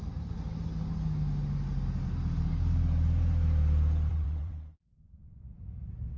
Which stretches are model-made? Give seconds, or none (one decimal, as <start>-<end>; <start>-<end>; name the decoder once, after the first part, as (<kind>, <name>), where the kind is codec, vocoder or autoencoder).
4.1-5.4 (vocoder, WaveNeXt)